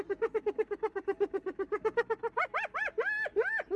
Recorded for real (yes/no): yes